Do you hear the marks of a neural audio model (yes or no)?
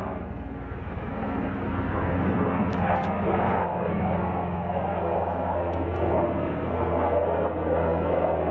yes